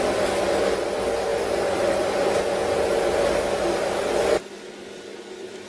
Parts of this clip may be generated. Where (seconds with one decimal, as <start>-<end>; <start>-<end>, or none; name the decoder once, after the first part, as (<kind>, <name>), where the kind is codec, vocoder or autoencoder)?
1.3-3.0 (vocoder, BigVGAN v2)